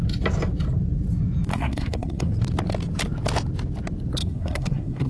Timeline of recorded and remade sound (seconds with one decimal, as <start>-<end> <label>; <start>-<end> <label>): 0.0-1.5 recorded; 1.5-2.3 remade; 2.3-4.2 recorded; 4.2-5.1 remade